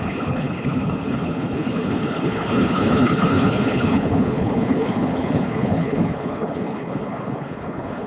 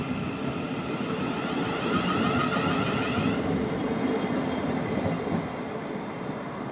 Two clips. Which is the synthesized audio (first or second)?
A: first